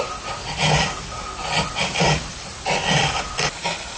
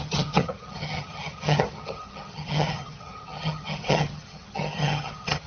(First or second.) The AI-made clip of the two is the second